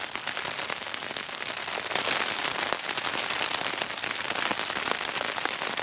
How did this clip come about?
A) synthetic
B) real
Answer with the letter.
B